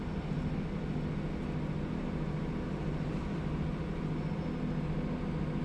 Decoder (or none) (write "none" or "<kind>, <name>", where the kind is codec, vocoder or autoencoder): none